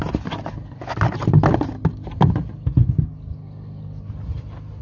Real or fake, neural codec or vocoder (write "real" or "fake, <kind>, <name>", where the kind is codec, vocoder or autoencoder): real